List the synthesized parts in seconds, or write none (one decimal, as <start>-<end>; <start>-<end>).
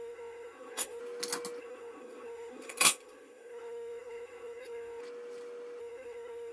0.0-1.0; 1.6-5.0; 5.8-6.5